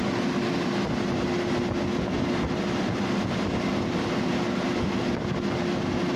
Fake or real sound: real